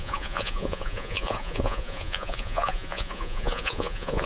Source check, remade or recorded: remade